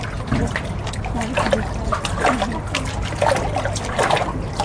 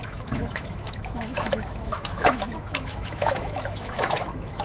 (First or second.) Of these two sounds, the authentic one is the first